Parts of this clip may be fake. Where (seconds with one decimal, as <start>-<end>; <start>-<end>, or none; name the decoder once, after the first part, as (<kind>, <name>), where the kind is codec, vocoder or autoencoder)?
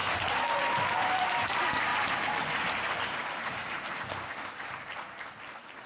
0.0-1.5 (vocoder, BigVGAN v2); 1.9-4.0